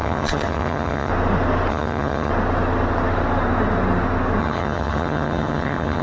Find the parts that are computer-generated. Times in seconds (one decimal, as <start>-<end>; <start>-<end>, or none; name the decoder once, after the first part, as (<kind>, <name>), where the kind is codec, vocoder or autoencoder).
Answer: 0.0-1.1 (vocoder, HiFi-GAN); 1.7-2.3; 4.4-6.0